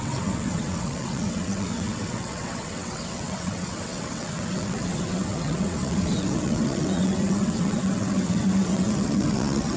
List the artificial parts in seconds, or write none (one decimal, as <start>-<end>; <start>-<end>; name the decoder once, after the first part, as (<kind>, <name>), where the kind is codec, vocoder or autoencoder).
0.0-9.8 (vocoder, WaveNeXt)